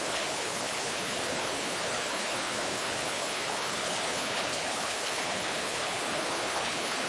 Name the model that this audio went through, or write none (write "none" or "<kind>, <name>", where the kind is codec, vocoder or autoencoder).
codec, HILCodec